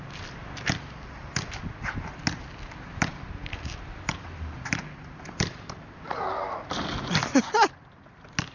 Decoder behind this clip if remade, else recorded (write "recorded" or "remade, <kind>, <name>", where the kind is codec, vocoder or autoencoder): recorded